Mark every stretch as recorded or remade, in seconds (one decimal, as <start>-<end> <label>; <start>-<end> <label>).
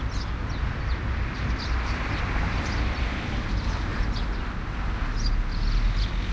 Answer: 0.0-0.4 recorded; 0.4-4.2 remade; 4.2-6.3 recorded